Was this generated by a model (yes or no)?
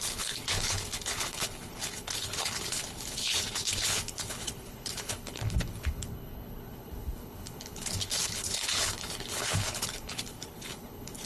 yes